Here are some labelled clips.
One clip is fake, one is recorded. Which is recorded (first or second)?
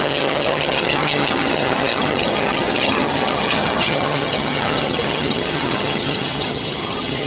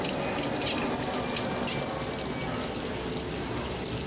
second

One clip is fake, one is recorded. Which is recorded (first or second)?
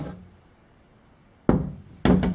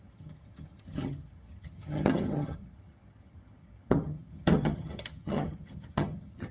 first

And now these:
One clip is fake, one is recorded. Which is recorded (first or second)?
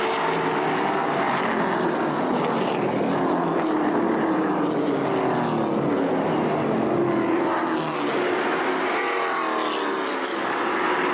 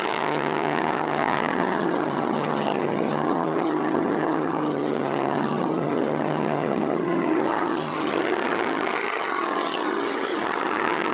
first